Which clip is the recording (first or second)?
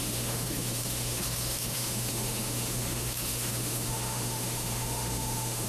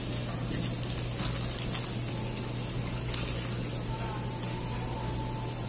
second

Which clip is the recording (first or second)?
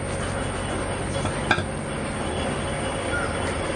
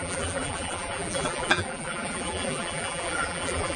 first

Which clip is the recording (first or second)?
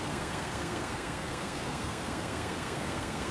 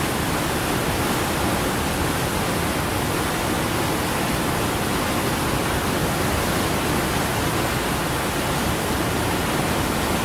second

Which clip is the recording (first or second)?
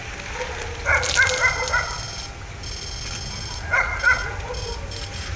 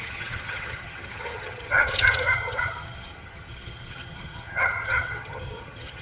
first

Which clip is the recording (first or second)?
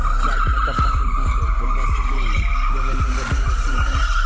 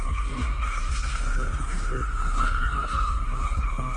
first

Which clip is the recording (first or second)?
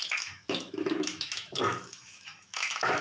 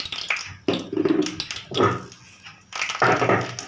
second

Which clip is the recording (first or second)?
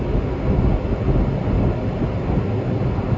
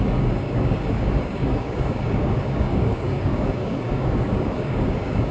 first